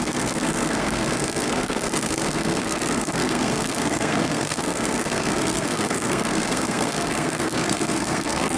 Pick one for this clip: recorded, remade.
remade